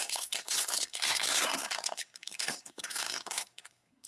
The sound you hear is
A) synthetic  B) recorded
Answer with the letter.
A